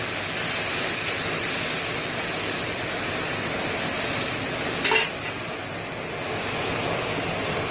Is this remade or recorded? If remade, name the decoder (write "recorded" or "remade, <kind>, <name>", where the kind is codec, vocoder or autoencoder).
recorded